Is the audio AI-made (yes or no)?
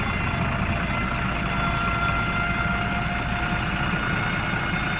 no